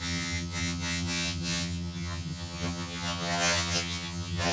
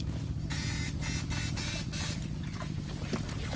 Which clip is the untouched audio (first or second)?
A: second